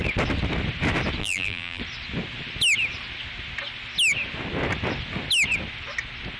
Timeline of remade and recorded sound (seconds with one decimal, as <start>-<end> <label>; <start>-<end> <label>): 0.0-1.2 recorded; 1.2-1.8 remade; 1.8-6.4 recorded